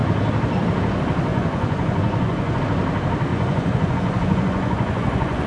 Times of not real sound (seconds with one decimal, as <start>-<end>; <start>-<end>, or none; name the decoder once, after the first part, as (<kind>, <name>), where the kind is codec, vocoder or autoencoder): 1.3-2.6 (vocoder, Vocos); 3.3-5.5